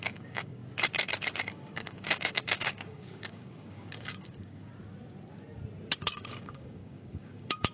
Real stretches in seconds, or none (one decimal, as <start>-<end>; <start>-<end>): 0.6-1.4; 4.7-6.3